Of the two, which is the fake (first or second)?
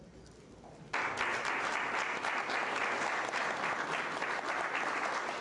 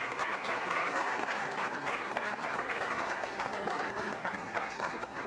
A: second